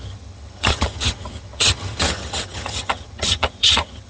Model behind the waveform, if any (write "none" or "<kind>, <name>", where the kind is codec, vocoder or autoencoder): vocoder, HiFi-GAN